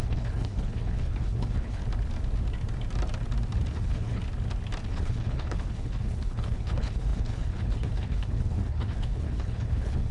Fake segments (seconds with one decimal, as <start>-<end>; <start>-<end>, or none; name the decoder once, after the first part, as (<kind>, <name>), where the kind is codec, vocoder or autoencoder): 0.0-1.8 (codec, HILCodec); 3.7-4.2; 4.9-10.1